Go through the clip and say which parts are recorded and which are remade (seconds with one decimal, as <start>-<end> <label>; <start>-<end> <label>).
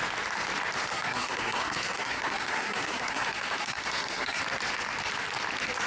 0.0-0.9 recorded; 0.9-4.4 remade; 4.4-5.9 recorded